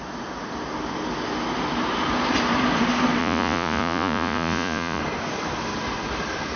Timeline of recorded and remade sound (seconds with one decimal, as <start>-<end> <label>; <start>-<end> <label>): 0.0-3.2 recorded; 3.2-5.0 remade; 5.0-6.6 recorded